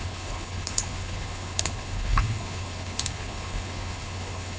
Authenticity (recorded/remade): remade